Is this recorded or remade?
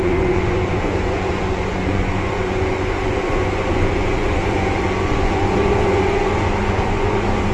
remade